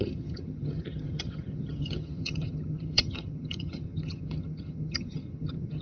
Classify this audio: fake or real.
fake